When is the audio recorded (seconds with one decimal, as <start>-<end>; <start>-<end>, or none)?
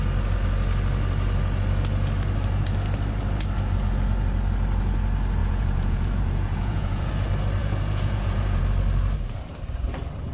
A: 0.0-5.4; 7.1-7.6; 8.6-10.3